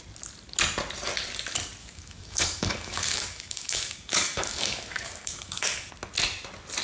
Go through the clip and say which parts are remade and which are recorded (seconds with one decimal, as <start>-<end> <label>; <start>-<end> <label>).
0.0-1.8 recorded; 1.8-5.9 remade; 5.9-6.8 recorded